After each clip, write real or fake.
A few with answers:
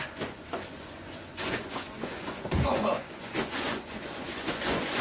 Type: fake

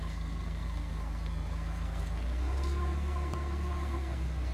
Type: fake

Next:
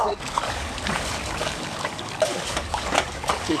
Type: fake